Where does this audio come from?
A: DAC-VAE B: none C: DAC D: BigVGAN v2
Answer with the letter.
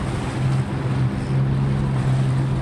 B